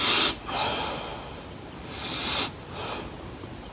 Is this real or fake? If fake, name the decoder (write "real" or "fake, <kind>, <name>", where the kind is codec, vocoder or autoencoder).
real